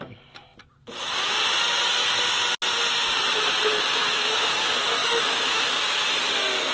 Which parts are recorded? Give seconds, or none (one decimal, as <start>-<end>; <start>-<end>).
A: 0.0-4.1; 4.6-5.0; 5.7-6.7

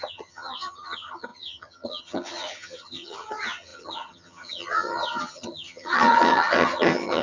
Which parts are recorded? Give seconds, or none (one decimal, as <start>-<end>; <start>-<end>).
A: none